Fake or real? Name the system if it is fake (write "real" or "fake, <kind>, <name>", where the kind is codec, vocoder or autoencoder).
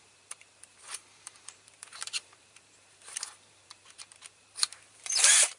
fake, vocoder, BigVGAN v2